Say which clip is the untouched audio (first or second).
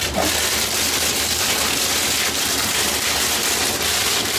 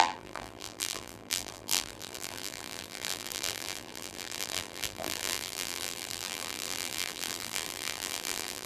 first